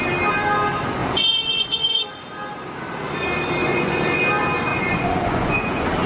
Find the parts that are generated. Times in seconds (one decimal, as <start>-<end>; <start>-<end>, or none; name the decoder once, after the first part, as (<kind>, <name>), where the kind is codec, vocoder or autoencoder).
1.0-2.0 (vocoder, Vocos); 3.6-4.2; 4.7-6.1